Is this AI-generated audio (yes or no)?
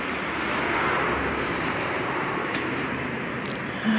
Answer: yes